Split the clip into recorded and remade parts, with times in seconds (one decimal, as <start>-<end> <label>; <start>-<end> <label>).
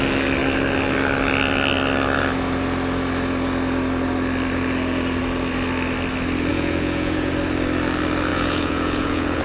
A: 0.0-6.5 recorded; 6.5-7.3 remade; 7.3-8.3 recorded; 8.3-9.4 remade